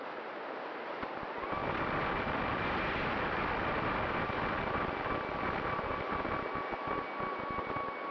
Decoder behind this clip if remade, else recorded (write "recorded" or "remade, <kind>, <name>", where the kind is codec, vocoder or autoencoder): recorded